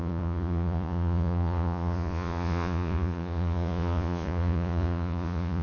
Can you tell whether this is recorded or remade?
remade